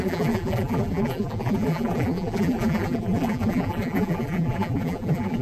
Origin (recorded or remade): remade